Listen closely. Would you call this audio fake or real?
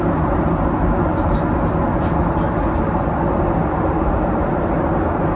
real